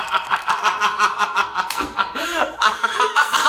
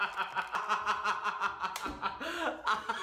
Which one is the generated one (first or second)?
first